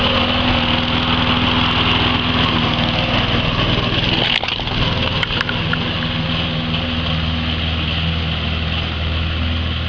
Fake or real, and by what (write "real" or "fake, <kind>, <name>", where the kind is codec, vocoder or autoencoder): real